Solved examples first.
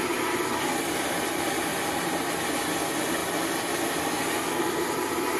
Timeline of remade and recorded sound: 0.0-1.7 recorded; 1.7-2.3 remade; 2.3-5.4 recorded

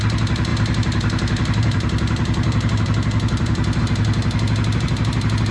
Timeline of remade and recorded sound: 0.0-0.5 recorded; 0.5-3.8 remade; 3.8-5.5 recorded

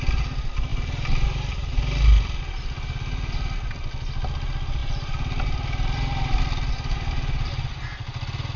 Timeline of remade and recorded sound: 0.0-4.8 recorded; 4.8-6.4 remade; 6.4-8.6 recorded

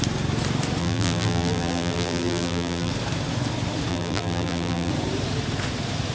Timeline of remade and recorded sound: 0.0-0.8 recorded; 0.8-2.9 remade; 2.9-3.9 recorded; 3.9-4.9 remade; 4.9-6.1 recorded

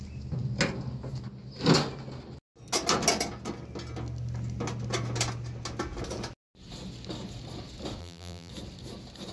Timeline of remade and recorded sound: 0.0-8.0 recorded; 8.0-8.5 remade; 8.5-9.3 recorded

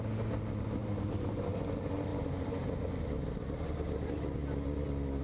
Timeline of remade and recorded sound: 0.0-0.8 recorded; 0.8-1.4 remade; 1.4-2.1 recorded; 2.1-2.9 remade; 2.9-5.2 recorded